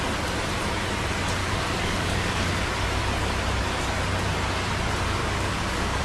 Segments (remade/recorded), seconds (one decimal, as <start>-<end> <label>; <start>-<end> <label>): 0.0-1.4 recorded; 1.4-2.6 remade; 2.6-5.2 recorded; 5.2-6.0 remade